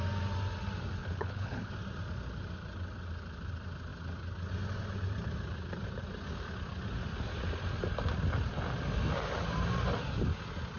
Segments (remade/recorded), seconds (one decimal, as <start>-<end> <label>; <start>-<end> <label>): 0.0-1.0 recorded; 1.0-1.7 remade; 1.7-10.8 recorded